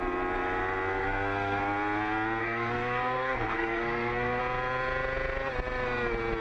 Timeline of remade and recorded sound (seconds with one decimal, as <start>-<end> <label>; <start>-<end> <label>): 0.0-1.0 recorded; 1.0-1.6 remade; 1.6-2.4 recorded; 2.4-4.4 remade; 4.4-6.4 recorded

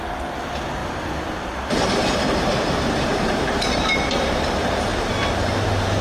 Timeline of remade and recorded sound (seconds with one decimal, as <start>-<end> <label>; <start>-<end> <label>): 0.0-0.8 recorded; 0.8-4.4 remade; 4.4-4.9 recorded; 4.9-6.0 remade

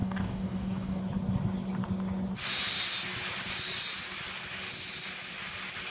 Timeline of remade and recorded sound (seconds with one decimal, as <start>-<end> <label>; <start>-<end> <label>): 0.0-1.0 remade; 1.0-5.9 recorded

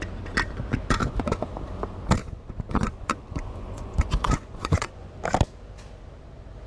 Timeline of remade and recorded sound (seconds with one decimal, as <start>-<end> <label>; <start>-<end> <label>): 0.0-1.0 recorded; 1.0-1.5 remade; 1.5-2.2 recorded; 2.2-5.1 remade; 5.1-6.7 recorded